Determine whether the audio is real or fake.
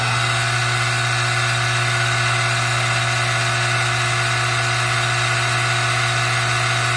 real